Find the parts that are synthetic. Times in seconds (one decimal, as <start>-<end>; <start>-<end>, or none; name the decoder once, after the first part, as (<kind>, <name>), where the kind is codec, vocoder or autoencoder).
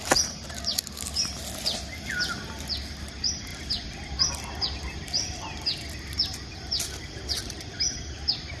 none